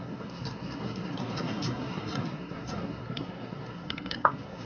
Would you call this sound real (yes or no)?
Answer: no